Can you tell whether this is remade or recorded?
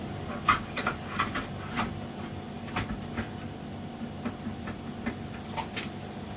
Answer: recorded